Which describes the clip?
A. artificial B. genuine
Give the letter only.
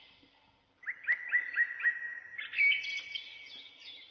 B